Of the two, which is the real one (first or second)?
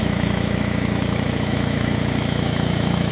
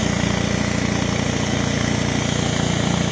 second